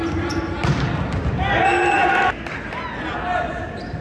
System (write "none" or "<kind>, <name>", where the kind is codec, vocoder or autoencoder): none